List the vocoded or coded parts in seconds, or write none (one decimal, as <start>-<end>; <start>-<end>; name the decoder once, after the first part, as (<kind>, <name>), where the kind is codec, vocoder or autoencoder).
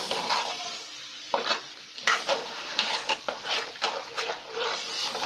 2.3-2.9 (autoencoder, DAC-VAE)